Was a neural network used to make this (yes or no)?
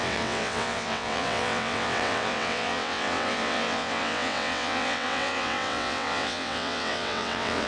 yes